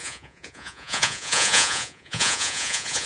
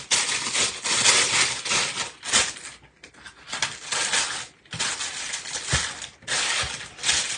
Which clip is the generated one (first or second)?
first